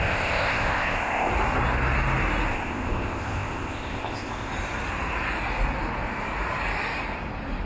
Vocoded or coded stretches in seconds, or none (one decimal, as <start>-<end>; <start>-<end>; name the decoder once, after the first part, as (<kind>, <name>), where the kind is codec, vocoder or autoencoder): 0.0-1.3 (codec, ZipCodec); 2.5-4.5